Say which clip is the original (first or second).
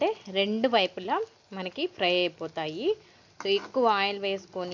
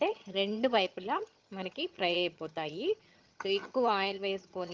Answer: first